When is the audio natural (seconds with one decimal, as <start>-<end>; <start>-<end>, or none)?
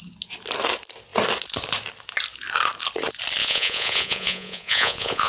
0.0-3.4